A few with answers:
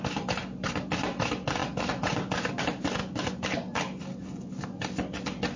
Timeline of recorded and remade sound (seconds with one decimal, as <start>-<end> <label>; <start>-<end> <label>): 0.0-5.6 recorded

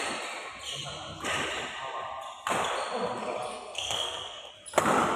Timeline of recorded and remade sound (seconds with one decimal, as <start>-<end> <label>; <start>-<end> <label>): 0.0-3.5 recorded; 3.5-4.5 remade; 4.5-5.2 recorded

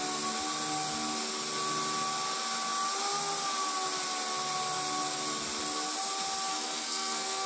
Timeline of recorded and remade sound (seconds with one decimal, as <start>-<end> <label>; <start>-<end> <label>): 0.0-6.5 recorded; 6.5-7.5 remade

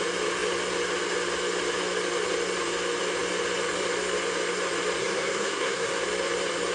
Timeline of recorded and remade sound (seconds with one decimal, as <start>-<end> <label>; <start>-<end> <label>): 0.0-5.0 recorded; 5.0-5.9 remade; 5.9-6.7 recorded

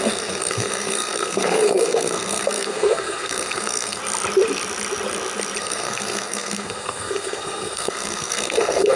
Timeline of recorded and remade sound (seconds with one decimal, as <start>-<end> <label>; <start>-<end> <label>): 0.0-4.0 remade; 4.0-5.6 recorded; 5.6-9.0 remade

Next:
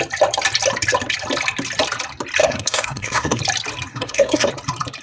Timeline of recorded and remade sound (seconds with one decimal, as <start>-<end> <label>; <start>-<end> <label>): 0.0-2.4 recorded; 2.4-3.4 remade; 3.4-3.9 recorded; 3.9-4.5 remade; 4.5-5.0 recorded

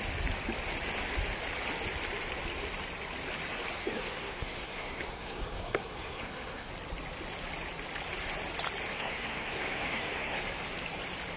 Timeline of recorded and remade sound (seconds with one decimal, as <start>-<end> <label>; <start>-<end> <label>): 0.0-3.8 recorded; 3.8-6.7 remade; 6.7-8.9 recorded; 8.9-10.4 remade; 10.4-11.4 recorded